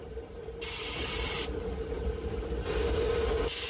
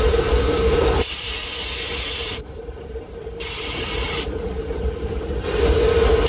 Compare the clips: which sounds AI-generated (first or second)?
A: second